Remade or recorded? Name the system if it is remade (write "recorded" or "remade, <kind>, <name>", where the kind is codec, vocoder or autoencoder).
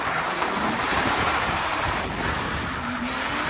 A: remade, vocoder, BigVGAN v2